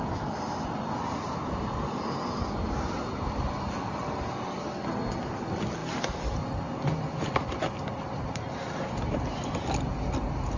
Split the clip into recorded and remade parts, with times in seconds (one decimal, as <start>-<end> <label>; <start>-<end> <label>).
0.0-10.6 recorded